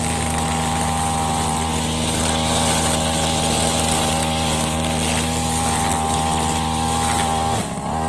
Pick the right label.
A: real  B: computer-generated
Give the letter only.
A